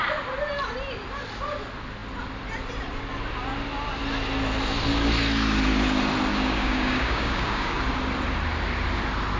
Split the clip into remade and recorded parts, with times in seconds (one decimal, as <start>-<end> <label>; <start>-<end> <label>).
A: 0.0-6.3 recorded; 6.3-7.8 remade; 7.8-9.4 recorded